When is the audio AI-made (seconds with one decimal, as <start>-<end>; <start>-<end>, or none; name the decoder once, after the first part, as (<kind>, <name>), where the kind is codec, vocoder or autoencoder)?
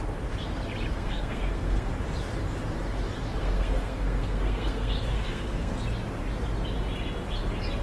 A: 0.9-1.9 (codec, SNAC); 3.4-5.7